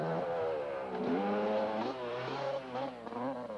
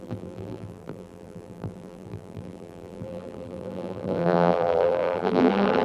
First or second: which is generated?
second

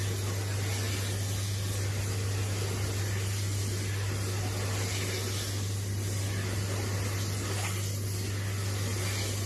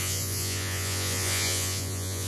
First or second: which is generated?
second